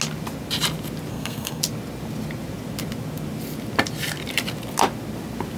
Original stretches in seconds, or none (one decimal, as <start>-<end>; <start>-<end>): 0.0-1.1; 1.6-5.6